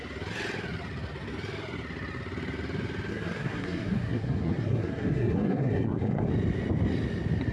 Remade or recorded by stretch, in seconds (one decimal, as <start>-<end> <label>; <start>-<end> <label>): 0.0-3.1 recorded; 3.1-6.3 remade; 6.3-7.5 recorded

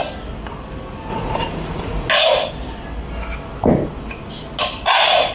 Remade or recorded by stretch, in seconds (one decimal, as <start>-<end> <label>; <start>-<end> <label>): 0.0-1.1 recorded; 1.1-2.1 remade; 2.1-5.3 recorded